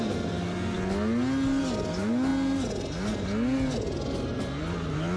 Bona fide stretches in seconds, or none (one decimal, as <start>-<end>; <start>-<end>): 0.0-5.2